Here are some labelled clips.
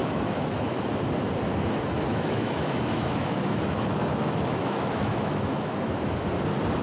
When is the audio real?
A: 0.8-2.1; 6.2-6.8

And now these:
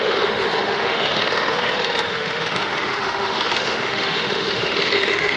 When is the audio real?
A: none

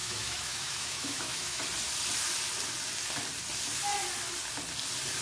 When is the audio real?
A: 1.6-5.2

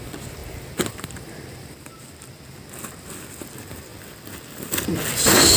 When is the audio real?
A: 0.0-5.6

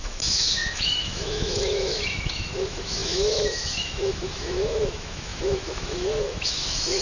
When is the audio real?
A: none

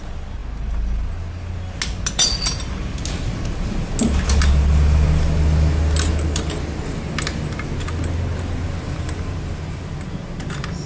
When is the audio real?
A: 0.0-10.9

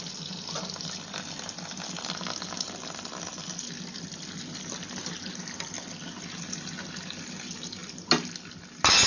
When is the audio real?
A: 0.0-9.1

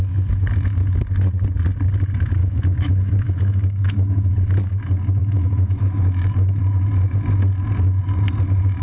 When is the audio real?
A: 0.0-2.4; 4.3-5.2; 6.6-8.8